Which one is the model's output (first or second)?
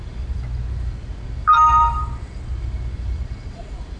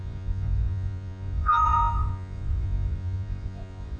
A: second